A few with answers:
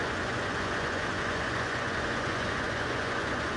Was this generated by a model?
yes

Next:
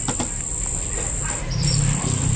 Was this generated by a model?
no